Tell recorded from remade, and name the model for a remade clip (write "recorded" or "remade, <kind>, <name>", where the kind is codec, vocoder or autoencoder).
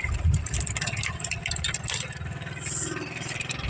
recorded